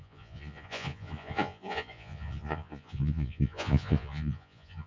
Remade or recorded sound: remade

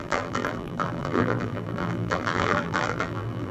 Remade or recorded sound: remade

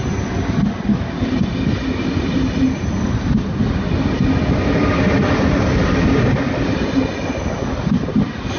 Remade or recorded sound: recorded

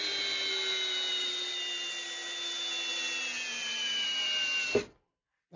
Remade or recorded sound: recorded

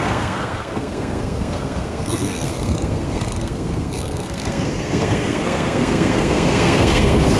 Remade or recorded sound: remade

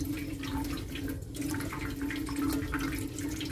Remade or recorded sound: recorded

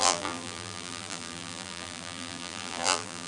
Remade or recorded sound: remade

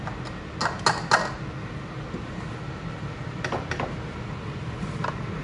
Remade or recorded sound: recorded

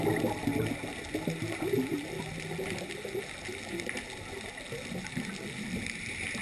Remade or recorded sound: recorded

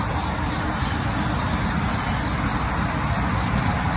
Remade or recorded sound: recorded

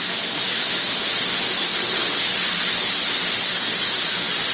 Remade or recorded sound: recorded